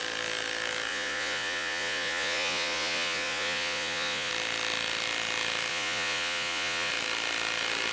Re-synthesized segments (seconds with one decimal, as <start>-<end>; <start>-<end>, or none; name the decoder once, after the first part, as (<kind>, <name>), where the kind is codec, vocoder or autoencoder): 0.9-4.3 (vocoder, Vocos); 5.7-6.9